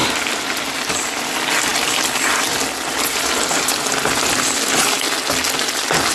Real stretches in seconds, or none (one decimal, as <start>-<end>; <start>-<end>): 0.0-6.1